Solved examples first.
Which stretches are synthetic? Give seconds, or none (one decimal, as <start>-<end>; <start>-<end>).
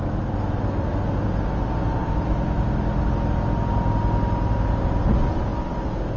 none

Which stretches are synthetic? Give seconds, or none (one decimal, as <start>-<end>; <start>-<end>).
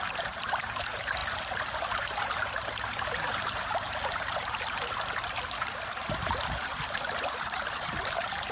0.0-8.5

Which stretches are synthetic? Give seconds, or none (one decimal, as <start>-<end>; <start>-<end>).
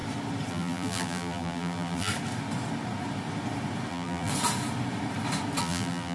0.5-2.1; 3.9-4.3; 5.6-6.1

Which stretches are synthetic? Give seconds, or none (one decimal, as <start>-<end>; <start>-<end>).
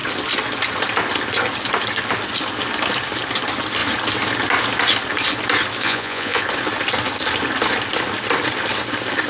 5.8-6.4